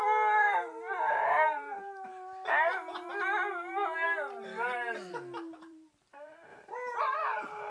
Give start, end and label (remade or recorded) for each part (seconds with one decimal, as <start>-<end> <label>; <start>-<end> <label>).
0.0-0.7 recorded; 0.7-2.1 remade; 2.1-3.5 recorded; 3.5-7.7 remade